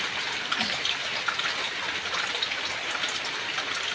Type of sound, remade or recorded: recorded